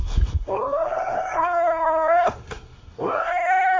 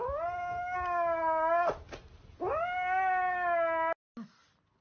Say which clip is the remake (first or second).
first